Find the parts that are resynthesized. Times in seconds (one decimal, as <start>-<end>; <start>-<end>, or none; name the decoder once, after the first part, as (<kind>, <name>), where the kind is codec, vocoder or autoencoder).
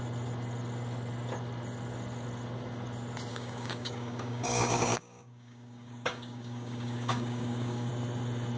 3.3-7.9 (codec, DAC)